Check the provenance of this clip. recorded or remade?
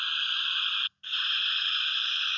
recorded